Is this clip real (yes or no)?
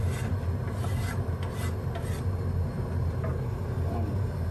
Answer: yes